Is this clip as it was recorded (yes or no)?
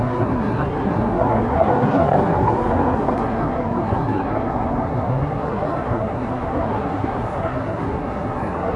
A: no